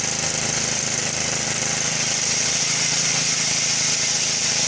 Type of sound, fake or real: real